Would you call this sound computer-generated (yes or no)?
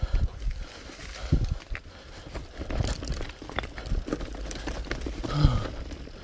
no